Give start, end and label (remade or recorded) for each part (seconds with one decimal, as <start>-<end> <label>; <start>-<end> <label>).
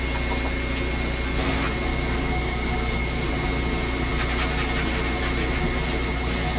0.0-1.9 recorded; 1.9-3.3 remade; 3.3-6.6 recorded